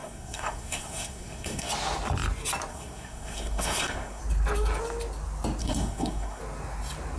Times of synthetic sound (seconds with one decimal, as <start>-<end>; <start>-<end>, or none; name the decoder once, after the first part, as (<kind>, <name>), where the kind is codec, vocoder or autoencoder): 0.0-1.7 (codec, SNAC); 2.7-4.2; 5.6-6.4